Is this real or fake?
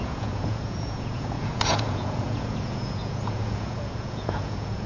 fake